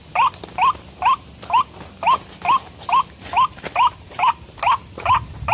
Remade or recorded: recorded